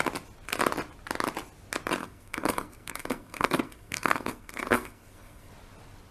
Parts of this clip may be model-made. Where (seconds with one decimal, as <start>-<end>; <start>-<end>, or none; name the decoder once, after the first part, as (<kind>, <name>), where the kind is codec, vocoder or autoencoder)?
2.0-5.5 (codec, SNAC)